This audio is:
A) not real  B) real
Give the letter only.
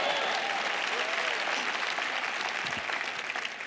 B